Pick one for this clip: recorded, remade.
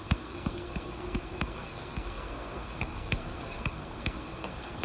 remade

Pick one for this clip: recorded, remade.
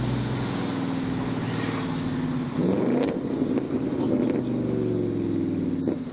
recorded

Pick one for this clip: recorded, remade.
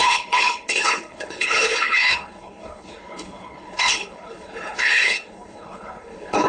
remade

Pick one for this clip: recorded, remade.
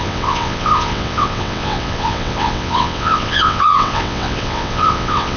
remade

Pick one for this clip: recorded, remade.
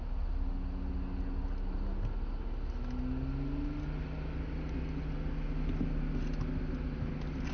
recorded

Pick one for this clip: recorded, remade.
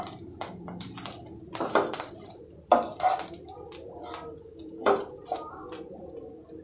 recorded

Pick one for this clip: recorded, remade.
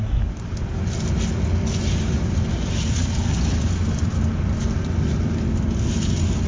recorded